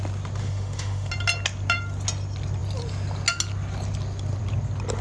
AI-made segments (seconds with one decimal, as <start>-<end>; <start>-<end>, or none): 0.4-1.1